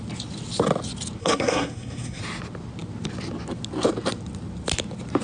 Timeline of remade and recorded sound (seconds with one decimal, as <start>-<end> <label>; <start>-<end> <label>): 0.0-1.2 recorded; 1.2-2.2 remade; 2.2-5.2 recorded